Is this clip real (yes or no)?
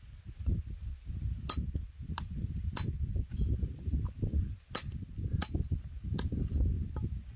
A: yes